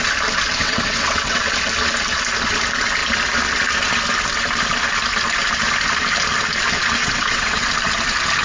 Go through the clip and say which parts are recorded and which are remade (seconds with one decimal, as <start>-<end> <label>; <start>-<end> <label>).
0.0-0.6 recorded; 0.6-1.4 remade; 1.4-7.0 recorded; 7.0-7.7 remade; 7.7-8.4 recorded